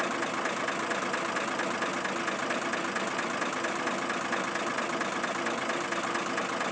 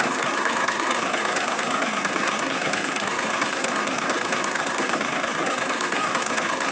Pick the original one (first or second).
first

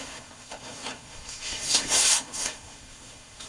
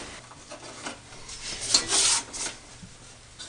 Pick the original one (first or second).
second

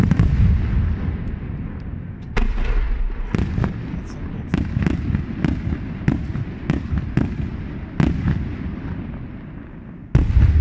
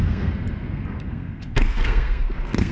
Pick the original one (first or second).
first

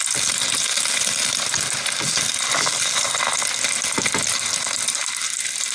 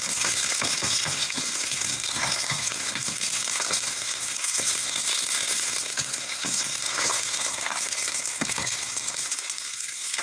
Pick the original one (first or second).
first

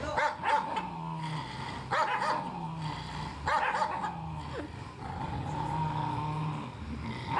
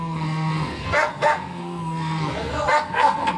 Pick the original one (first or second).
first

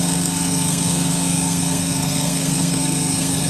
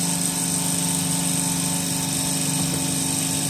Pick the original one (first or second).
second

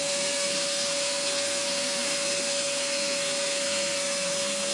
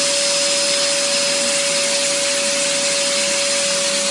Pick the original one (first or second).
second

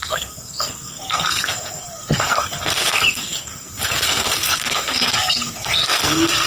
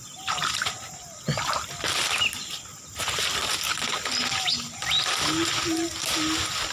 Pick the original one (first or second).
second